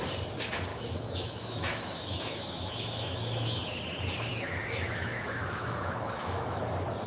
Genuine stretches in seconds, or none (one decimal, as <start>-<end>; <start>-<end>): 0.0-0.7; 3.8-4.3; 6.6-7.1